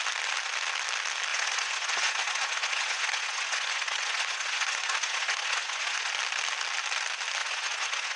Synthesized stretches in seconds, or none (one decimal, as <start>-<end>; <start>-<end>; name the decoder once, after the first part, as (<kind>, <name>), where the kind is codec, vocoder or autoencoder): 1.3-6.1 (vocoder, Vocos); 7.4-8.2